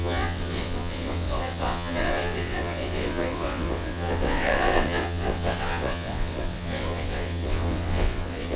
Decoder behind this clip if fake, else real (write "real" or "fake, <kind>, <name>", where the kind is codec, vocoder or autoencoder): fake, vocoder, WaveNeXt